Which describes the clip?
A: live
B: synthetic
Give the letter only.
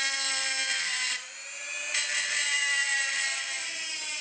B